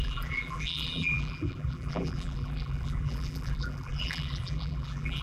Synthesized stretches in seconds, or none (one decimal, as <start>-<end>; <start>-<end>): 0.0-5.2